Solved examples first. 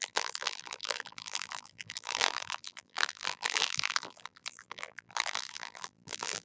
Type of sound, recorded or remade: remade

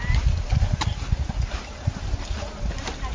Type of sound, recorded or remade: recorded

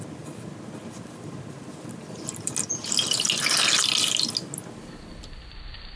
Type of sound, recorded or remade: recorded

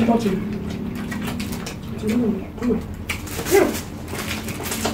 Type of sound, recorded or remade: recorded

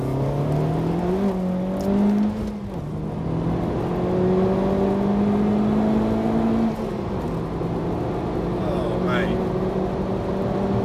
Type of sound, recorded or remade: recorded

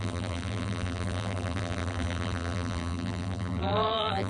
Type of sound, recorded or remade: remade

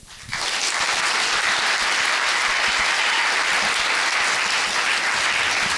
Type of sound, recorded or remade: recorded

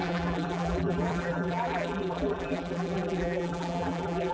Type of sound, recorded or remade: remade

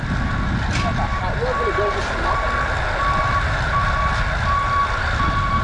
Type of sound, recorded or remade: recorded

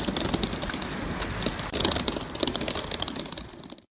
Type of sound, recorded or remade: recorded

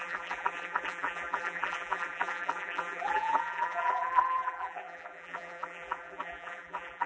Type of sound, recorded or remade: remade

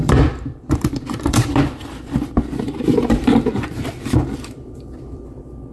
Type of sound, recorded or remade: remade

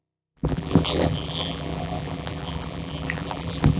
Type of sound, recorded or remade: remade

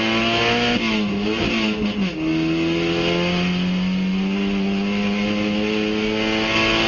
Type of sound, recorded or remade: recorded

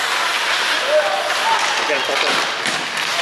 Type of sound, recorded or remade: recorded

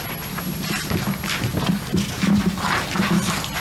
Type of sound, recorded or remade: remade